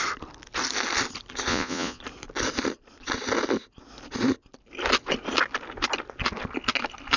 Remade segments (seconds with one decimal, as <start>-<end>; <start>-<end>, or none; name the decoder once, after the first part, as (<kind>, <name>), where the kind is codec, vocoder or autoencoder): 1.5-2.0 (vocoder, Vocos)